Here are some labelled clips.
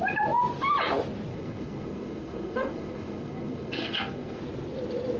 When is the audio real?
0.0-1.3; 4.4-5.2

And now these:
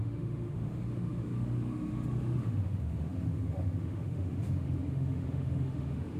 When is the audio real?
none

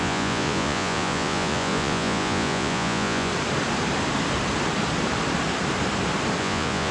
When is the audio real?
3.3-6.4

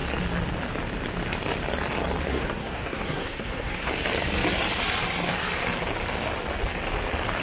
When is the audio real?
0.0-2.3; 3.9-7.4

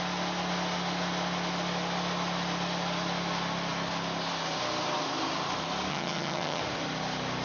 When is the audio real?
0.0-5.9; 6.6-7.4

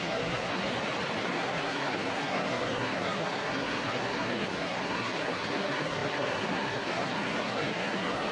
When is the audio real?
0.7-1.2